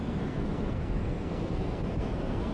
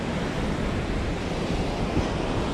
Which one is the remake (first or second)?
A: first